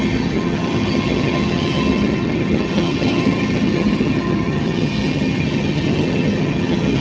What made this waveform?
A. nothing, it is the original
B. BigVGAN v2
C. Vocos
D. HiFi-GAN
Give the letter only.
D